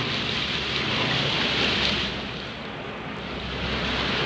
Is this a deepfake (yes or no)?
no